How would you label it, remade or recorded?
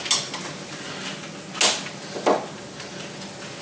recorded